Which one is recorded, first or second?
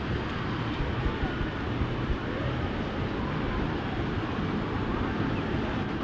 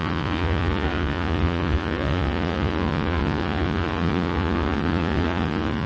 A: first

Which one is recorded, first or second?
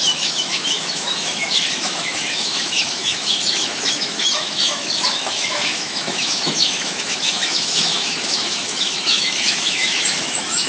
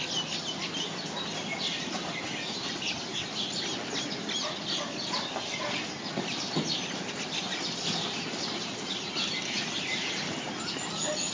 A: second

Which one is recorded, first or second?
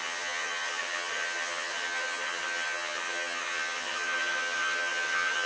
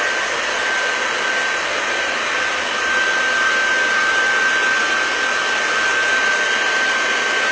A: second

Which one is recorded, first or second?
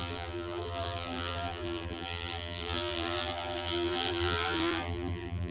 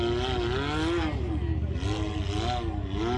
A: second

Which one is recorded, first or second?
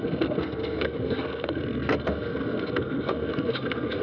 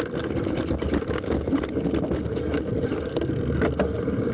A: second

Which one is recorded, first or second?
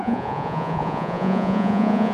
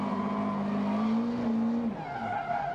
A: second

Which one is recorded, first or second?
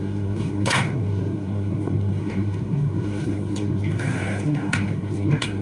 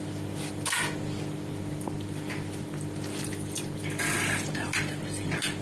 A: second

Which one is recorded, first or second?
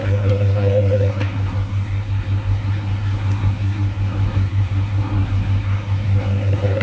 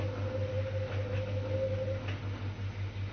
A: second